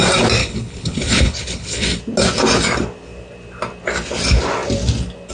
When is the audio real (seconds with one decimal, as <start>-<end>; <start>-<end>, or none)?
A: 0.0-0.4; 2.0-5.3